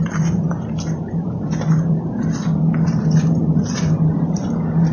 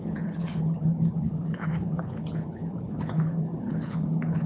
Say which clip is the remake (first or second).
second